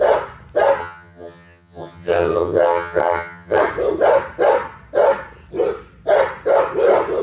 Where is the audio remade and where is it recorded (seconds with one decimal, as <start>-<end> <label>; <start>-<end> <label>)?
0.0-0.8 recorded; 0.8-3.6 remade; 3.6-7.2 recorded